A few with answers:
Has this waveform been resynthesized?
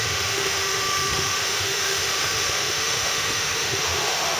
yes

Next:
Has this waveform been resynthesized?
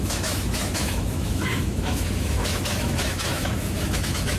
yes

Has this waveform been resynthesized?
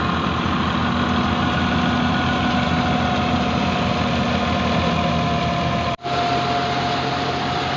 no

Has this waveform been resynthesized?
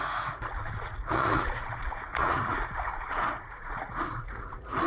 yes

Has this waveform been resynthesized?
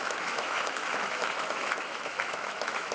yes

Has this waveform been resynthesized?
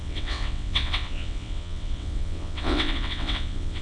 yes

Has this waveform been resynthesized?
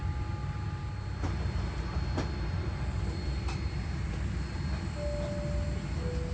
no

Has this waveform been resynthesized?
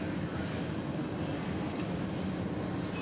no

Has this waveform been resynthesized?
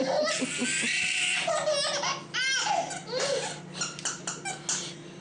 no